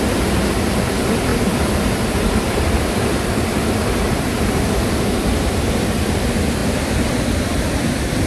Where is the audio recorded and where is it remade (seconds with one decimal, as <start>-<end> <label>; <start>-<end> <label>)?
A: 0.0-6.6 remade; 6.6-7.3 recorded; 7.3-8.3 remade